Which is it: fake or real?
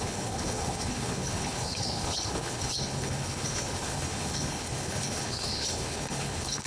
fake